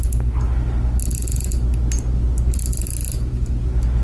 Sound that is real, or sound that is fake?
real